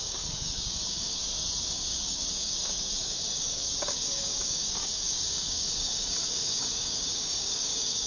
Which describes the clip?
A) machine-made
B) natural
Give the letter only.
A